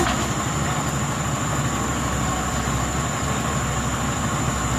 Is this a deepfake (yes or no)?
no